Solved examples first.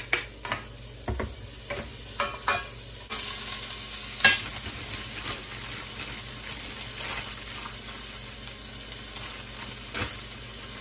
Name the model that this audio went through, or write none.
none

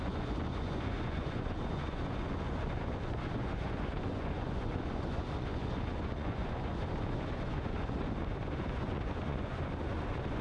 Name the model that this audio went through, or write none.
vocoder, Vocos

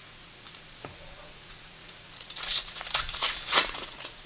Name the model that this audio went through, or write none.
vocoder, Vocos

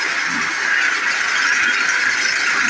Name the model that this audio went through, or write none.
none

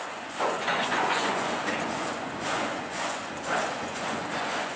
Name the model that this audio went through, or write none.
vocoder, Vocos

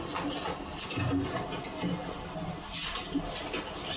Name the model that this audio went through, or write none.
none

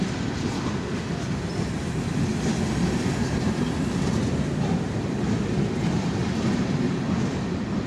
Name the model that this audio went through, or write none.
none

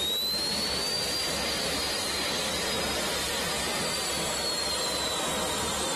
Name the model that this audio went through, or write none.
none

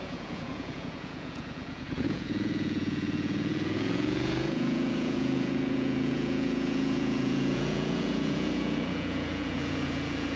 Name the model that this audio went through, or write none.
vocoder, Vocos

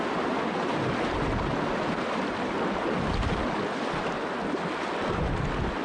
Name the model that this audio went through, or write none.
none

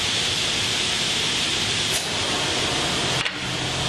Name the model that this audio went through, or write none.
none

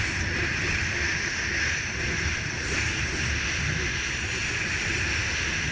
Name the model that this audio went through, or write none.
none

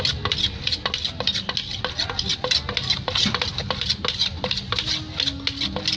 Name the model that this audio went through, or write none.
none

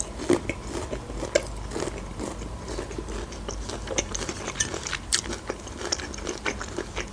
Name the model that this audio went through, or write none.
none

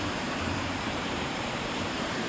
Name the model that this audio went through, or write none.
vocoder, BigVGAN v2